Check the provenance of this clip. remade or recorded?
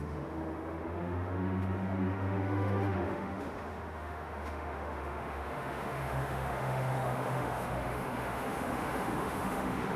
remade